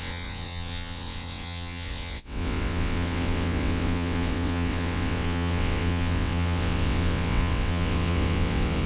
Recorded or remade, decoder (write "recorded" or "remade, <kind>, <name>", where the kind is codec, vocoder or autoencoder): remade, vocoder, WaveNeXt